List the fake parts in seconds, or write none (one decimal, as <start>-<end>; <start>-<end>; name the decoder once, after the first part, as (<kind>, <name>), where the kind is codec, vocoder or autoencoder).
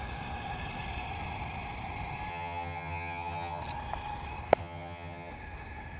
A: 2.3-3.6 (vocoder, HiFi-GAN); 4.6-5.3